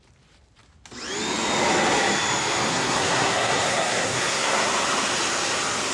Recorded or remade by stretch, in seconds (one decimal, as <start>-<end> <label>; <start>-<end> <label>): 0.0-2.7 recorded; 2.7-4.7 remade; 4.7-5.9 recorded